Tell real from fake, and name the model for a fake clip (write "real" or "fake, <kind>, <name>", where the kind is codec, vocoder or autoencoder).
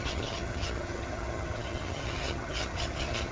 fake, vocoder, HiFi-GAN